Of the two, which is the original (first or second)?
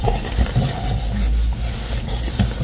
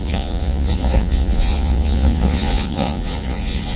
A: first